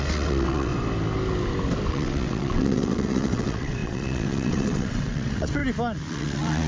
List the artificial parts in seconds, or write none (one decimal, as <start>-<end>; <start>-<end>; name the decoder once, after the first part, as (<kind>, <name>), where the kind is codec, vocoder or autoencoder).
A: 0.0-0.7 (vocoder, WaveNeXt); 1.9-5.6; 6.1-6.7